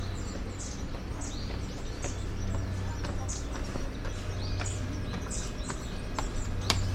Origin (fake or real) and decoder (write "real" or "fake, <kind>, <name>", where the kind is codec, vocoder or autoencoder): real